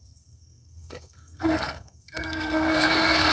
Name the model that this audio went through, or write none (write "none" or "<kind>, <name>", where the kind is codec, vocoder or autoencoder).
codec, SNAC